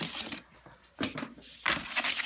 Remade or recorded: recorded